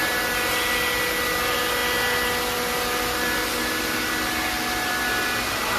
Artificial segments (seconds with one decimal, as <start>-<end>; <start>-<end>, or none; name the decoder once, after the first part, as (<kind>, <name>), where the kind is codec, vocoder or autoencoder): none